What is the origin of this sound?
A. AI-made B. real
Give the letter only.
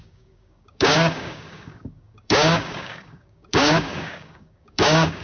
A